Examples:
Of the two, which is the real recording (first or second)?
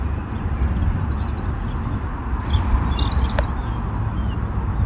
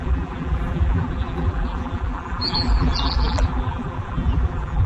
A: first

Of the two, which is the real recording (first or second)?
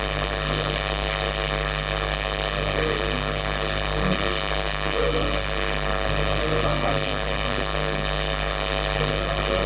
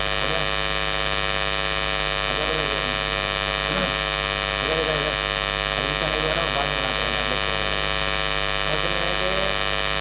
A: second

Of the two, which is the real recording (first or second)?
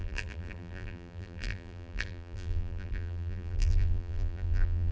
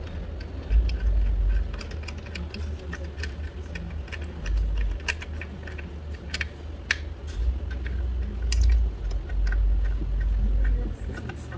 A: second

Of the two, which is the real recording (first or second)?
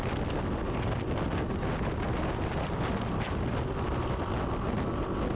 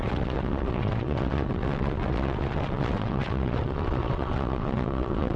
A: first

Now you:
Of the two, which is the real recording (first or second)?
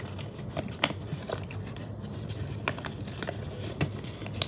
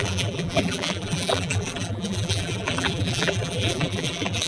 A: first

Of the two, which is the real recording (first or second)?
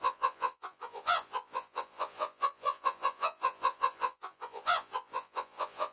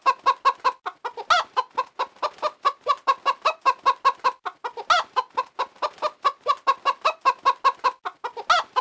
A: second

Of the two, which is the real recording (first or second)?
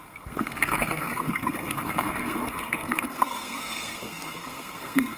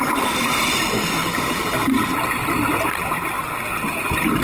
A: second